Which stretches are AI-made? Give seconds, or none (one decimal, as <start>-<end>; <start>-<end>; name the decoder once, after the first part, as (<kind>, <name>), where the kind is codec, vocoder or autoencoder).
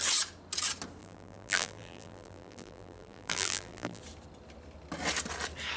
1.0-4.0 (vocoder, BigVGAN v2)